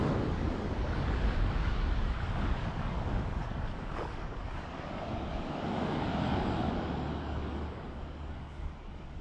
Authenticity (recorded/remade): remade